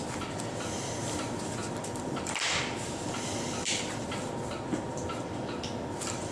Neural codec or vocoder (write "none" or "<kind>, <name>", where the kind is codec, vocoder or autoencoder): vocoder, BigVGAN v2